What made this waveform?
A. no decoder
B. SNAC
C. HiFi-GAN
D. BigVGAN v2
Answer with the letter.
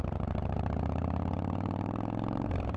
D